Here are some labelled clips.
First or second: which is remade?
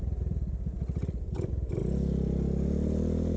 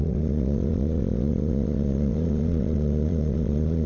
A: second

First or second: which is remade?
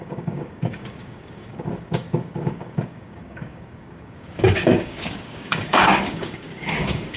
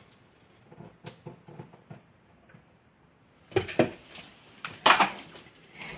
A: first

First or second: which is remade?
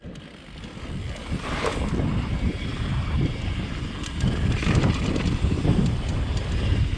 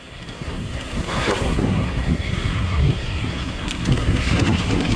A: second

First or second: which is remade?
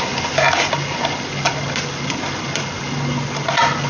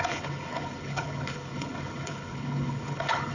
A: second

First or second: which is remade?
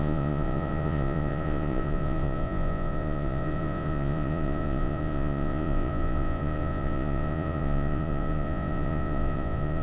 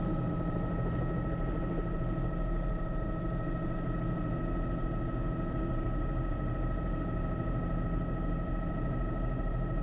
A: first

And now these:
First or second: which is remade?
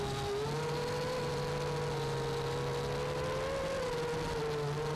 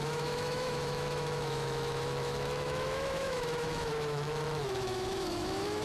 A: second